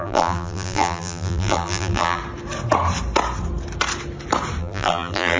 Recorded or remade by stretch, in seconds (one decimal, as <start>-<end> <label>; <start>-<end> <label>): 0.0-2.2 remade; 2.2-4.6 recorded; 4.6-5.4 remade